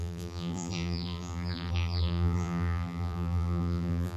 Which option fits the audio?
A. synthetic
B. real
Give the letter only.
A